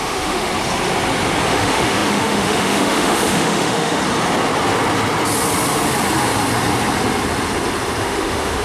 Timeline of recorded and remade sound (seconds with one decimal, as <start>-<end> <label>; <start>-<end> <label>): 0.0-0.5 remade; 0.5-1.5 recorded; 1.5-4.0 remade; 4.0-8.0 recorded; 8.0-8.6 remade